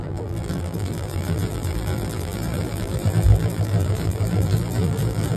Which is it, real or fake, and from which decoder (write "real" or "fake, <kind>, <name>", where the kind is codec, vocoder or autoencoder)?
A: fake, vocoder, BigVGAN v2